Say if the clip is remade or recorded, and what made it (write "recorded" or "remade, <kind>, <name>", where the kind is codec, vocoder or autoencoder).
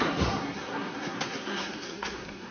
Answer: remade, codec, SNAC